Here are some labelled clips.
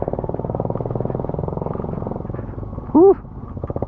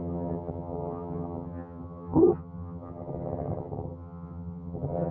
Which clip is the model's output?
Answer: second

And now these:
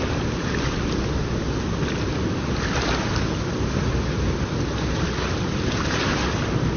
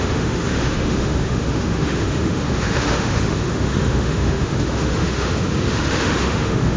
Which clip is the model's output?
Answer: second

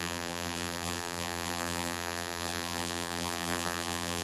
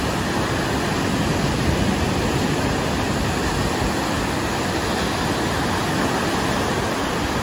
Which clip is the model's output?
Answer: first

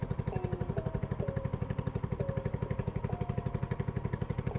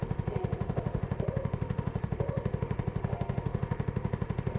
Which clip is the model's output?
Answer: second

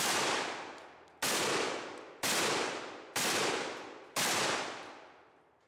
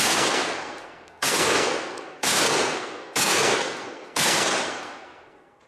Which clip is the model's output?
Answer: second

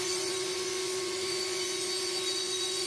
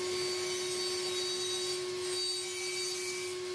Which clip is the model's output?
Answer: first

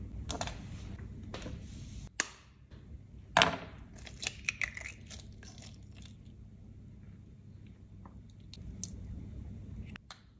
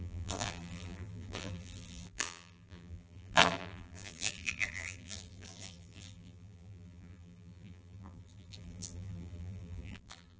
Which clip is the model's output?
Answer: second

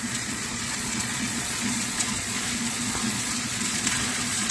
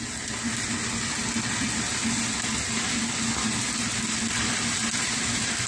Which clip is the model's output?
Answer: first